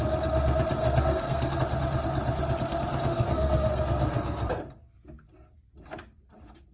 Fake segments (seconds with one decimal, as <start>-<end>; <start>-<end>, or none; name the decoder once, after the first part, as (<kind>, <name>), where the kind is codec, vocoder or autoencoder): 0.8-1.6 (codec, SNAC); 3.1-4.5